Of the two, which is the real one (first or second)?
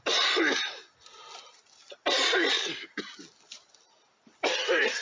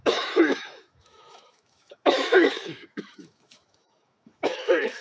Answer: first